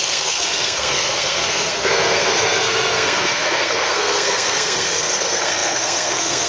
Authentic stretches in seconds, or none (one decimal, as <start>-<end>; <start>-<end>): none